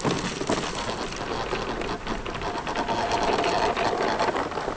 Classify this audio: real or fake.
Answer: real